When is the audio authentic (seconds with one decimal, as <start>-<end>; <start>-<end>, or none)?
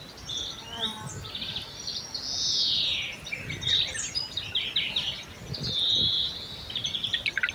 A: 0.0-7.5